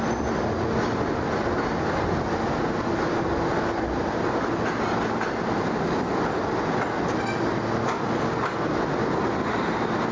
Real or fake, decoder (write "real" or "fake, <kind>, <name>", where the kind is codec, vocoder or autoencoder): real